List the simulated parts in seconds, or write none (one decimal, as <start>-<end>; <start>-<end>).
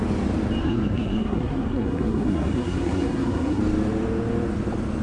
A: 0.6-3.6